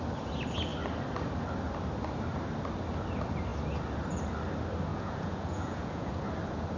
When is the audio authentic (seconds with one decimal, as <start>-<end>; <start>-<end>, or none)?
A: 0.0-4.9; 6.1-6.8